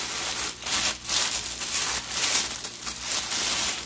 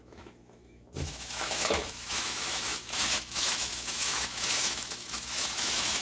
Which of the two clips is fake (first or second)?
second